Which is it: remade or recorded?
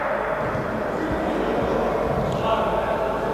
recorded